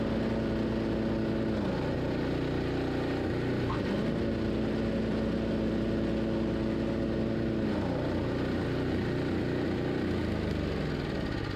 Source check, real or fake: real